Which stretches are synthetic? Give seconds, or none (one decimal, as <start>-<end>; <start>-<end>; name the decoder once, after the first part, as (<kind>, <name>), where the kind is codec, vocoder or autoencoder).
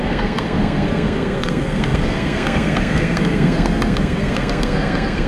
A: 0.0-5.3 (codec, SNAC)